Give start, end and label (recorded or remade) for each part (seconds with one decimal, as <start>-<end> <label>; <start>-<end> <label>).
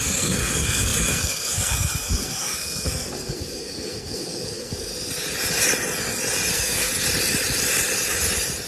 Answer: 0.0-4.9 remade; 4.9-6.5 recorded; 6.5-6.9 remade; 6.9-8.7 recorded